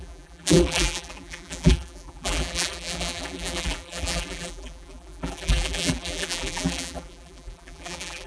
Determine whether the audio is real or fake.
fake